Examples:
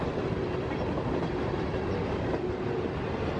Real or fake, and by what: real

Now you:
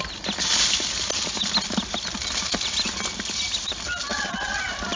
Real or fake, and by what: real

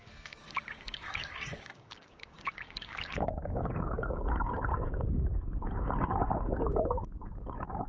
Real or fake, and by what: fake, codec, DAC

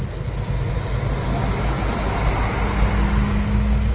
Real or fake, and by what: real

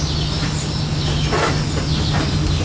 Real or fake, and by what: real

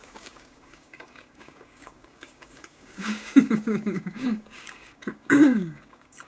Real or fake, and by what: fake, codec, DAC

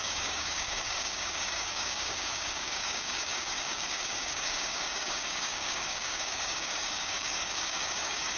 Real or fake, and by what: fake, codec, DAC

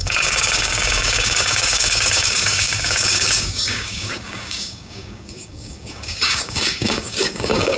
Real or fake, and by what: fake, codec, DAC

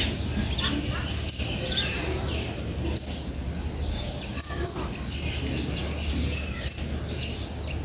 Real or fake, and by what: real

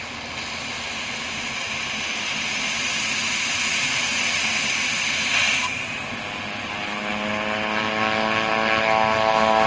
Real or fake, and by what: real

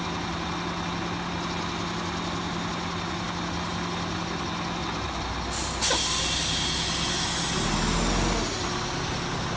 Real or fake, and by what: real